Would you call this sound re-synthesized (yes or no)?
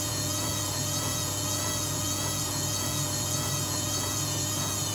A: yes